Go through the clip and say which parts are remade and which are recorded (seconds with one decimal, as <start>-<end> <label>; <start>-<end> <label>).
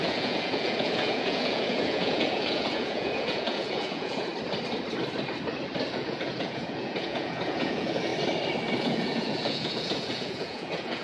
0.0-4.3 remade; 4.3-5.9 recorded; 5.9-8.1 remade; 8.1-8.8 recorded; 8.8-11.0 remade